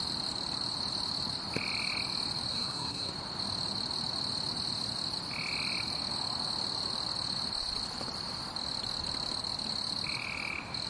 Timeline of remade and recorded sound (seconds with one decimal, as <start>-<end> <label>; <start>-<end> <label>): 0.0-2.5 recorded; 2.5-3.1 remade; 3.1-10.9 recorded